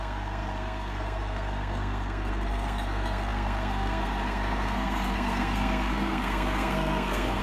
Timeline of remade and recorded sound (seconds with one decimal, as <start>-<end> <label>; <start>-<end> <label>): 0.0-7.4 remade